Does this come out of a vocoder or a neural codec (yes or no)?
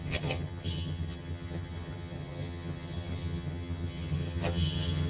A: yes